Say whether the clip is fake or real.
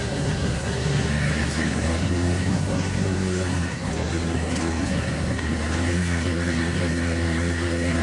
fake